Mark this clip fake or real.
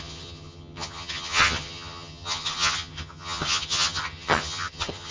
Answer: fake